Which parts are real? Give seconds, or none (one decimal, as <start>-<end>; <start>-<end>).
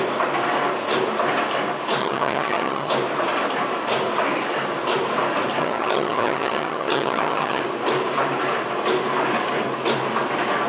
0.0-2.0; 2.9-5.6; 7.6-10.7